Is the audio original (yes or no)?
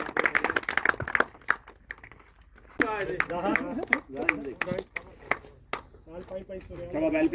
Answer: yes